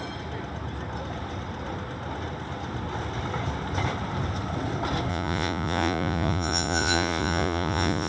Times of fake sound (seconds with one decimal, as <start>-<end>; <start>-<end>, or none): 5.1-8.1

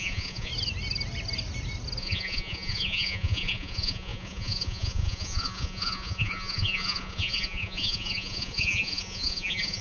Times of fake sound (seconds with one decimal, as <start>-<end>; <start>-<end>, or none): 0.0-0.5; 2.0-9.8

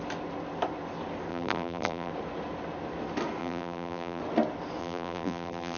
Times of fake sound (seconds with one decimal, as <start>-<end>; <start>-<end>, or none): 1.3-2.1; 3.4-4.2; 4.8-5.8

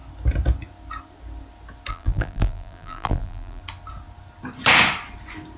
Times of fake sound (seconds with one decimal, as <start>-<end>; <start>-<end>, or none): 1.9-3.6